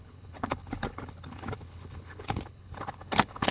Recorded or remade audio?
remade